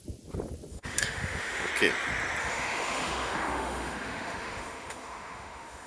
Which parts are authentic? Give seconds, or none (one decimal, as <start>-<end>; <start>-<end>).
0.0-0.7; 1.7-2.4